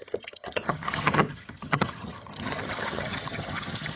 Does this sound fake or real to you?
fake